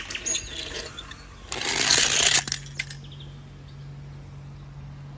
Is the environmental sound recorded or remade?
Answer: recorded